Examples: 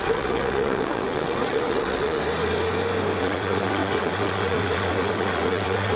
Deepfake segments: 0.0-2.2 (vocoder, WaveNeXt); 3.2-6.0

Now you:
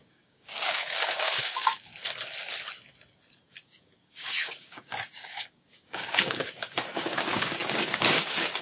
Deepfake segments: 0.0-1.9 (codec, DAC); 3.5-8.6

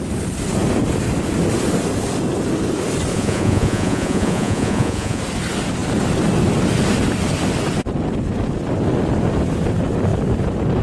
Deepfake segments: 3.1-5.2 (vocoder, Vocos)

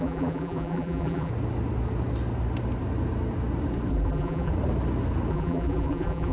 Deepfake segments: 0.0-1.3 (vocoder, BigVGAN v2); 3.9-4.5; 5.3-6.3